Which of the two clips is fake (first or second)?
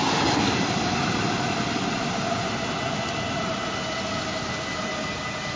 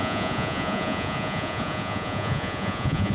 second